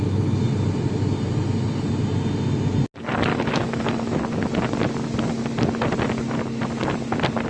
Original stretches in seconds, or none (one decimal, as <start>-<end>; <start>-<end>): 0.0-3.3; 4.2-7.5